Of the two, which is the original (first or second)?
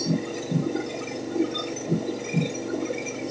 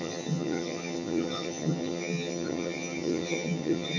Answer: first